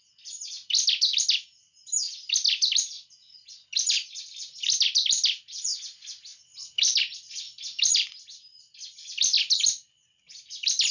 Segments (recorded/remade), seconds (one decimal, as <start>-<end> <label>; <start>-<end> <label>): 0.0-10.9 recorded